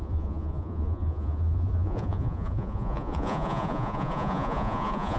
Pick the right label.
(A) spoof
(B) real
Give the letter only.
A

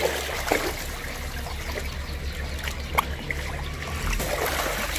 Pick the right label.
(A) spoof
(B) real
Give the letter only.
B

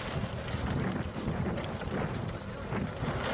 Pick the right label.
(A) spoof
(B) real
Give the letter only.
B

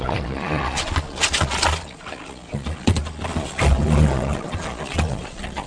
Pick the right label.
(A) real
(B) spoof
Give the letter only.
B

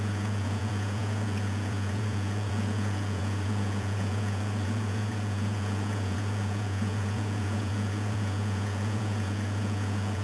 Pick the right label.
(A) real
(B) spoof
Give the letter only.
B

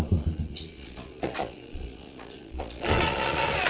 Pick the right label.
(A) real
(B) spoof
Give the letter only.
B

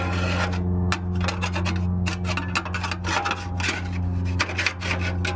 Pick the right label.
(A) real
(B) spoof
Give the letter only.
A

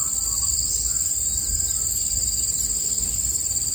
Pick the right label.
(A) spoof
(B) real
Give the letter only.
B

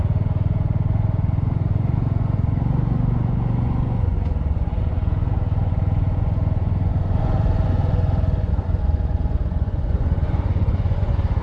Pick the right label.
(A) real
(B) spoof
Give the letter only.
B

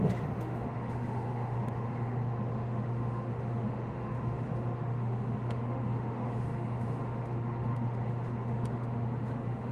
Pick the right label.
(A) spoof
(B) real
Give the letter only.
A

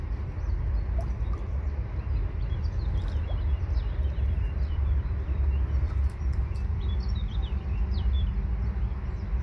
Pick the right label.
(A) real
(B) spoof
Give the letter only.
B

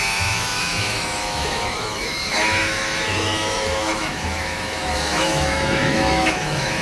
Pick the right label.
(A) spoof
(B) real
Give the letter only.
A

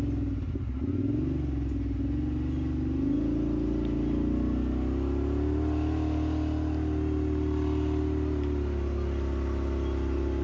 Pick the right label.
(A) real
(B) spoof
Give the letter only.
A